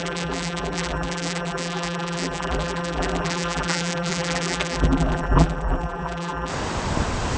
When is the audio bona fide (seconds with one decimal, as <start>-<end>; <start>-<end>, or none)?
6.5-7.4